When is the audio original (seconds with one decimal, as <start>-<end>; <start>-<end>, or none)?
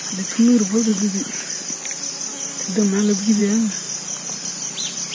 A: 0.0-5.1